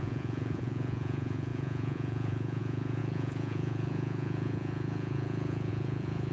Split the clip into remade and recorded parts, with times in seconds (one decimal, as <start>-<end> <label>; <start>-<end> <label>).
0.0-6.3 remade

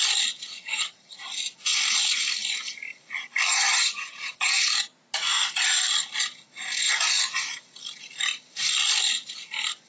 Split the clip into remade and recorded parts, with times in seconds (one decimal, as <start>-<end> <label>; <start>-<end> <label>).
0.0-0.5 recorded; 0.5-1.2 remade; 1.2-3.5 recorded; 3.5-4.6 remade; 4.6-9.9 recorded

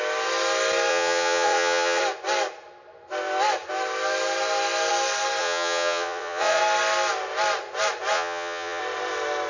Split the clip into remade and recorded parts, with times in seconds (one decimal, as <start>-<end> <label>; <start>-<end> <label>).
0.0-0.9 recorded; 0.9-2.0 remade; 2.0-5.4 recorded; 5.4-6.6 remade; 6.6-8.1 recorded; 8.1-8.8 remade; 8.8-9.5 recorded